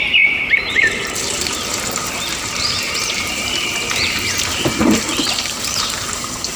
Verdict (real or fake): fake